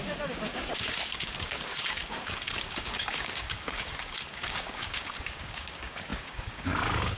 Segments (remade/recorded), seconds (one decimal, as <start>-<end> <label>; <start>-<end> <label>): 0.0-7.2 remade